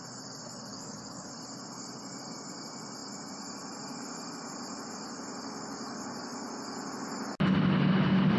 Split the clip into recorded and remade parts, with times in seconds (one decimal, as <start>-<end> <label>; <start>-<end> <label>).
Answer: 0.0-0.7 recorded; 0.7-1.3 remade; 1.3-8.4 recorded